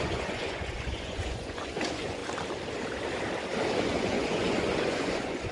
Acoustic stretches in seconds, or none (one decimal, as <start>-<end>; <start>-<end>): 2.2-3.7